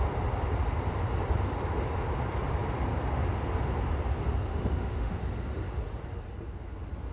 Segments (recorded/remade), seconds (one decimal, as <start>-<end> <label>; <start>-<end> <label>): 0.0-4.5 recorded; 4.5-5.1 remade; 5.1-7.1 recorded